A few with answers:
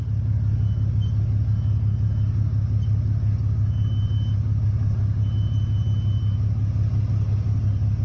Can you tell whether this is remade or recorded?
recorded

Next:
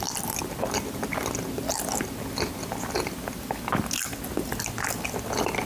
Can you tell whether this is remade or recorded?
recorded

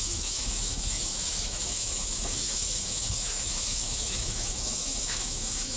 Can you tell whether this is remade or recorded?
remade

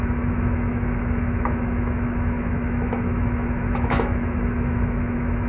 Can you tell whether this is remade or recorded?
remade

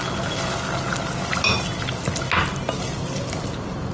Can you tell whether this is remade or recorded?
recorded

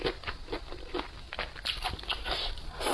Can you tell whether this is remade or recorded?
recorded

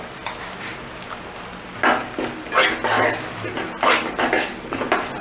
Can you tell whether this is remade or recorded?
recorded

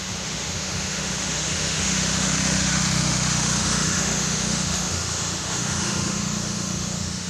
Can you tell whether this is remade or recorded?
remade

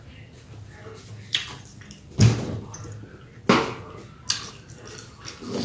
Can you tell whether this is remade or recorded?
recorded